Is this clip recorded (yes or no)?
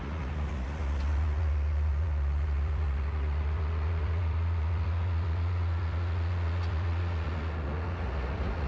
no